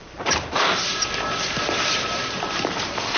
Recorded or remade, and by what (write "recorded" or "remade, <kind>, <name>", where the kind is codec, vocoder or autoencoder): remade, vocoder, BigVGAN v2